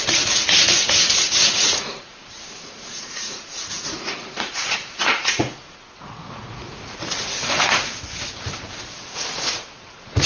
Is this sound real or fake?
fake